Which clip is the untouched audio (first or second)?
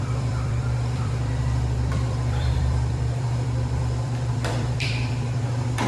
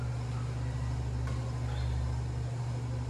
second